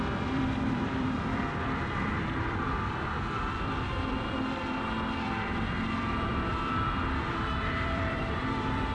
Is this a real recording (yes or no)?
no